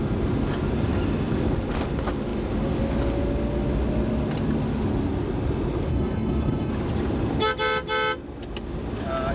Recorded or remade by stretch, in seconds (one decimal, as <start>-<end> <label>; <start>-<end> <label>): 0.0-5.9 recorded; 5.9-6.7 remade; 6.7-9.3 recorded